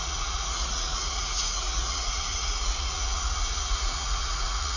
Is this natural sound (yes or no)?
no